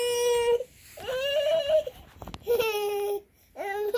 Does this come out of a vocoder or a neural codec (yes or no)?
no